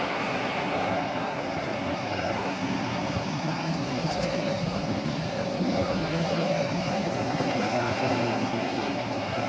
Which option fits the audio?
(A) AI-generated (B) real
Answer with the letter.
A